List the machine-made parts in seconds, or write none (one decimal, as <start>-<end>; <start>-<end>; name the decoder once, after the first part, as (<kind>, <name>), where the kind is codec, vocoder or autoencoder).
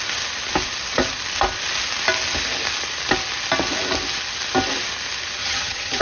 5.4-6.0 (vocoder, HiFi-GAN)